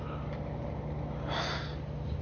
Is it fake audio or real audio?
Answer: real